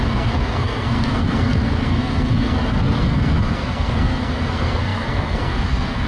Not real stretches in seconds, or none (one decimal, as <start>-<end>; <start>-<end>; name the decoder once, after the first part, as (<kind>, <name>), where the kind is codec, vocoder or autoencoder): 0.0-6.1 (codec, SNAC)